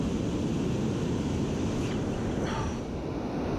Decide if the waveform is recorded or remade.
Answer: recorded